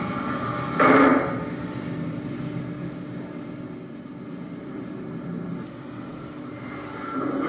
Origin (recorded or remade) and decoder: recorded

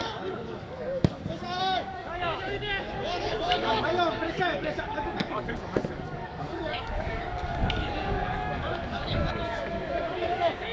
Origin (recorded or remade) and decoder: remade, codec, DAC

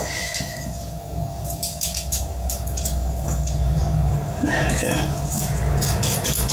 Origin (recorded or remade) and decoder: remade, codec, DAC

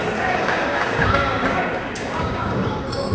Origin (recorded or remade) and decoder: remade, codec, DAC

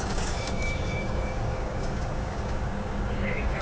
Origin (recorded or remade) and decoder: remade, codec, DAC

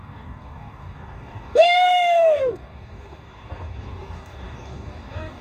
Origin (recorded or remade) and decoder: remade, codec, DAC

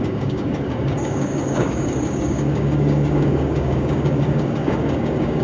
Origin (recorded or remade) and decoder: remade, codec, DAC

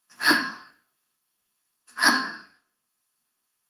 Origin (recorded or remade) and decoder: remade, codec, DAC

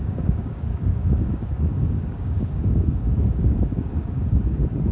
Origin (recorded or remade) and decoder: remade, codec, DAC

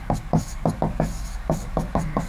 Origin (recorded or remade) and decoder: remade, codec, DAC